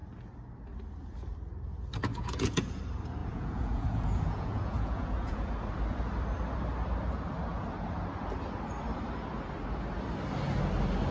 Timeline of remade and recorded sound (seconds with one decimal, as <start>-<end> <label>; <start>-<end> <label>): 0.0-2.1 recorded; 2.1-2.8 remade; 2.8-3.2 recorded; 3.2-5.5 remade; 5.5-11.1 recorded